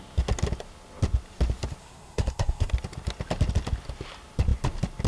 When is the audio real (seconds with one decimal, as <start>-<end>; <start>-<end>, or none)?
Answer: 0.0-1.8; 2.7-5.1